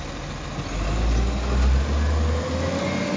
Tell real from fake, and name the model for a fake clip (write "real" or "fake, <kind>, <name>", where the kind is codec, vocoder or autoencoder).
real